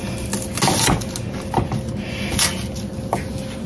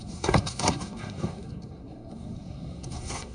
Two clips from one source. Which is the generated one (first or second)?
second